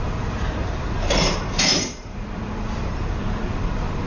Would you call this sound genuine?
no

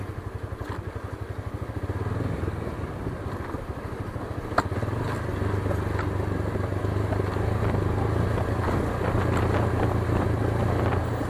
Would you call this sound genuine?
yes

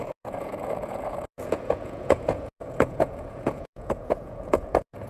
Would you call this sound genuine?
no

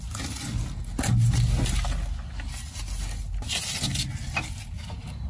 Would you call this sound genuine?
yes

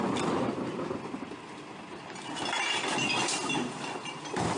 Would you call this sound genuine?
yes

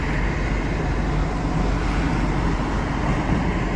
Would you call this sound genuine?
yes